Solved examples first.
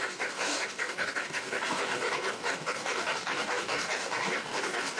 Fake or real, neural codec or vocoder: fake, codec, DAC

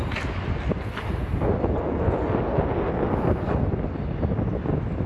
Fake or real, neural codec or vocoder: real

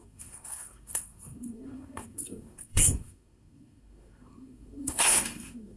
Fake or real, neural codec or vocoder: fake, codec, SNAC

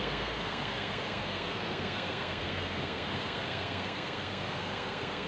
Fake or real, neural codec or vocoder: fake, codec, SNAC